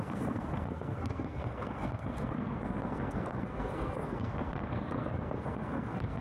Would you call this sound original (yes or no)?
no